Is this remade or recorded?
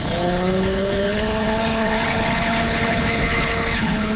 remade